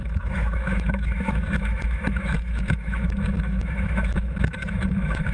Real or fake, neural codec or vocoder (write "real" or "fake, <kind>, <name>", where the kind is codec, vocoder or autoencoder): fake, autoencoder, DAC-VAE